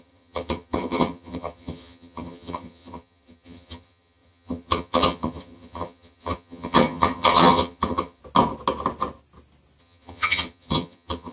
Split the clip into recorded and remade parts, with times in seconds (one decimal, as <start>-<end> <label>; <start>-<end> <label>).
0.0-8.2 remade; 8.2-9.8 recorded; 9.8-11.3 remade